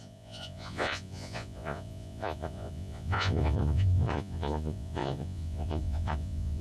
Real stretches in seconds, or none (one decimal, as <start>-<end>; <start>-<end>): none